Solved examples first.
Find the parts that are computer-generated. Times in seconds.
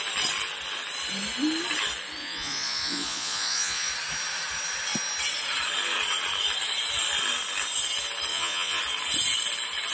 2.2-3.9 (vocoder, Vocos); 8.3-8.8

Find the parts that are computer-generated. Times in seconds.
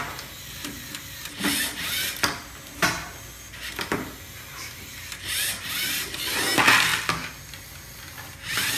none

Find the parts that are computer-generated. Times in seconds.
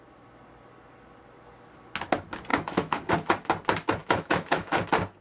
2.5-3.1 (autoencoder, DAC-VAE); 4.0-4.8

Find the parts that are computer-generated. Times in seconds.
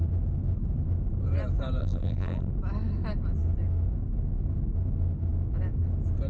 1.8-2.5 (vocoder, BigVGAN v2)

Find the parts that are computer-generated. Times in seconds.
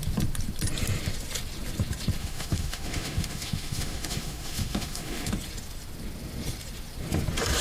2.2-5.3 (autoencoder, DAC-VAE)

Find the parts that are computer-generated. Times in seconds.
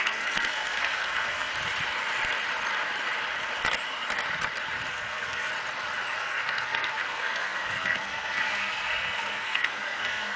0.0-1.5 (codec, SNAC); 4.9-5.5; 6.2-10.4